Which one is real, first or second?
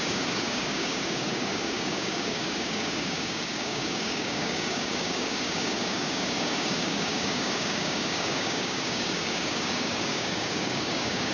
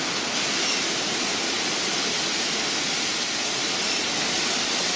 second